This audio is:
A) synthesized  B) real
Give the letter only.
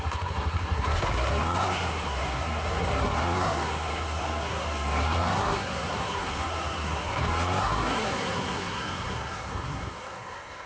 A